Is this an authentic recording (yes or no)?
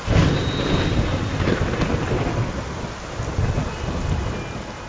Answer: yes